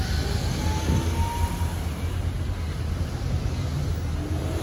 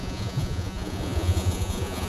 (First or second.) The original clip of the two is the first